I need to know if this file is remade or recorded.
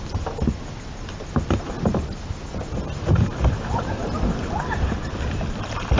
recorded